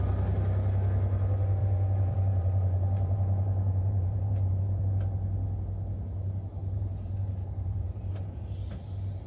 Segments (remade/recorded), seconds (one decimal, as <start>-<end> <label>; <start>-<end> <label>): 0.0-1.6 recorded; 1.6-4.8 remade; 4.8-6.6 recorded; 6.6-8.1 remade; 8.1-9.3 recorded